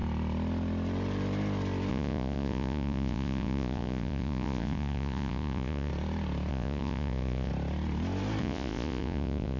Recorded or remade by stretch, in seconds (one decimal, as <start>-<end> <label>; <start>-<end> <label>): 0.0-1.9 recorded; 1.9-5.9 remade; 5.9-6.5 recorded; 6.5-7.5 remade; 7.5-8.4 recorded; 8.4-9.6 remade